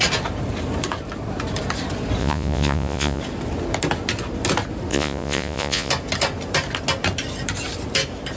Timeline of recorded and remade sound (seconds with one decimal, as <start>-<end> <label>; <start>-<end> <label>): 0.0-2.2 recorded; 2.2-3.2 remade; 3.2-4.9 recorded; 4.9-5.9 remade; 5.9-8.4 recorded